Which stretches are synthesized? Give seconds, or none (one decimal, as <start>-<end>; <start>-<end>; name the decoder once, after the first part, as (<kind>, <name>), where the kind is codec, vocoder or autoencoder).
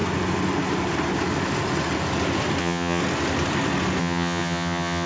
2.6-3.0 (vocoder, HiFi-GAN); 4.0-5.1